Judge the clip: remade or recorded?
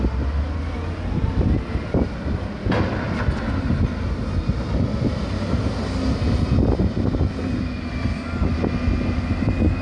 recorded